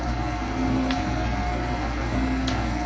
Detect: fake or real fake